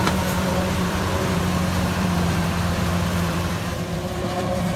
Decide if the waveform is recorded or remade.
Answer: remade